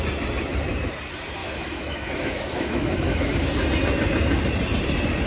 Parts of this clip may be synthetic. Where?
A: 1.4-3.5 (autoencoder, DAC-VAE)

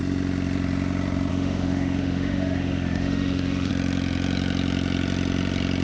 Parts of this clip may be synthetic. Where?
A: 1.3-3.7 (autoencoder, DAC-VAE)